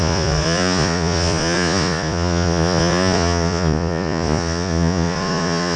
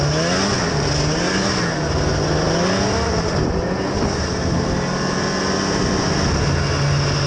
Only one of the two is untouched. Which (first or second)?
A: second